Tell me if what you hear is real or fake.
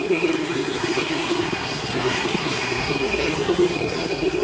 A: fake